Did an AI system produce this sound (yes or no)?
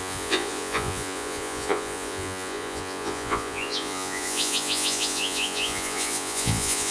yes